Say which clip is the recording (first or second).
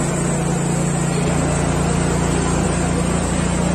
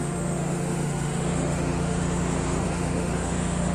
first